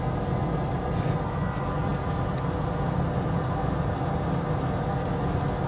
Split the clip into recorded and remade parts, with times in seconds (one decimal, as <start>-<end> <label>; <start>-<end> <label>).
0.0-5.7 recorded